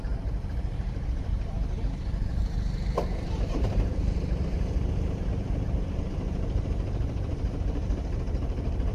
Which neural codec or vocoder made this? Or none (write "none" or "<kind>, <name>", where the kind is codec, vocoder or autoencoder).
vocoder, BigVGAN v2